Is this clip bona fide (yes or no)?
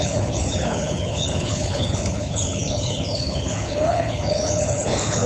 no